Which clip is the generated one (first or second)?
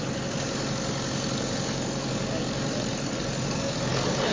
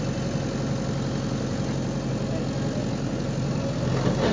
first